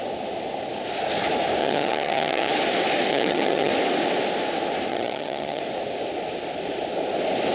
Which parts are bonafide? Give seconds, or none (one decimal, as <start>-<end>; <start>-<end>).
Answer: 0.0-1.6; 2.5-3.1; 3.7-4.9; 5.6-7.5